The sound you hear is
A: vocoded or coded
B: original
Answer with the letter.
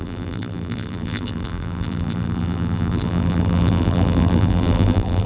A